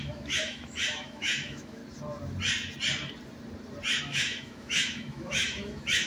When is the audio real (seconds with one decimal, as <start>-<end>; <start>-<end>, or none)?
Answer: 1.8-4.0